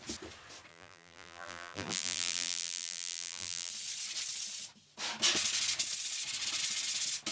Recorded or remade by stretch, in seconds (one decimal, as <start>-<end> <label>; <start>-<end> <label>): 0.0-0.7 recorded; 0.7-3.7 remade; 3.7-7.3 recorded